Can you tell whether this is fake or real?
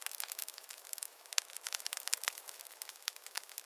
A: fake